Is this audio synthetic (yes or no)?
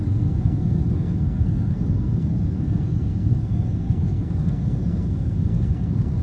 yes